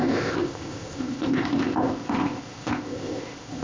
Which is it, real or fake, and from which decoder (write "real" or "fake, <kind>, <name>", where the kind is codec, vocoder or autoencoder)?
fake, codec, ZipCodec